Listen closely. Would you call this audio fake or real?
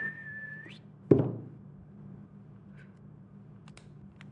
fake